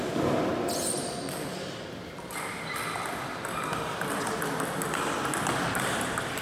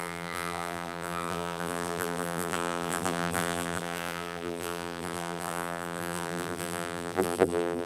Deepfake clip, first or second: second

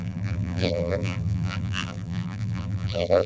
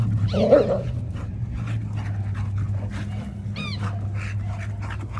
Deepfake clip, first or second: first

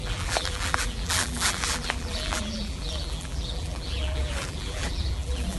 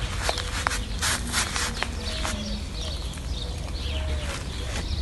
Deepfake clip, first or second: first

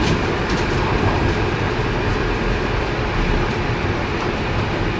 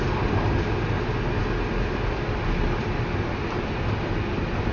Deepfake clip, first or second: first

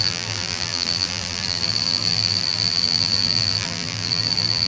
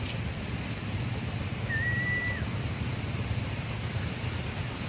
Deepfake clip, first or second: first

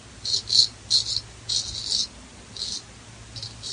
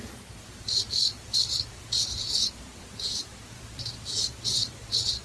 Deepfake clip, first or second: second